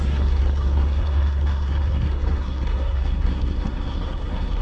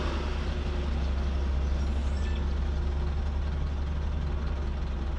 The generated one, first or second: first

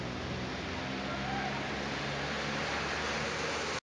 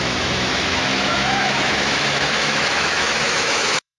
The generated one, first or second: second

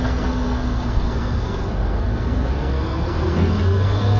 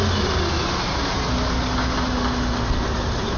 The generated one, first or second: first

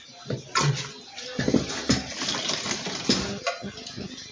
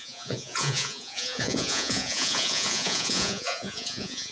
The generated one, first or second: second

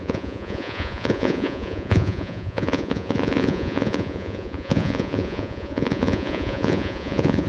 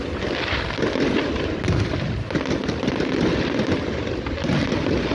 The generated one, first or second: first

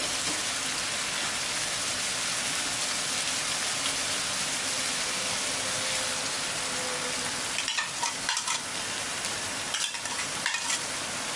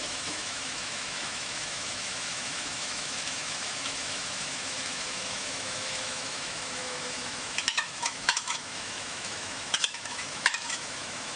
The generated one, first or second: second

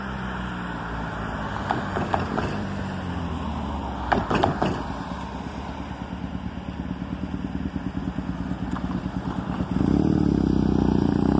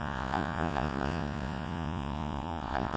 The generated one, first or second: second